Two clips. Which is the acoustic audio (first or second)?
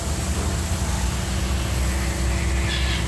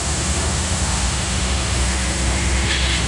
first